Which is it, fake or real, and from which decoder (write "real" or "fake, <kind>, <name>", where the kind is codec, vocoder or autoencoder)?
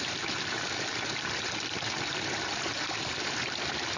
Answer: real